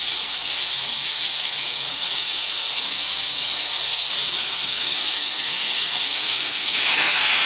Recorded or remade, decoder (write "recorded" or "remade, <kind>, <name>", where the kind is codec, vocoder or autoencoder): remade, codec, SNAC